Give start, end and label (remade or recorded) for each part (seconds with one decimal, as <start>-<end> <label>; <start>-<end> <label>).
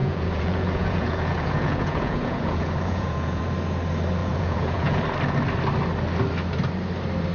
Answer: 0.0-3.4 remade; 3.4-4.2 recorded; 4.2-5.0 remade; 5.0-7.3 recorded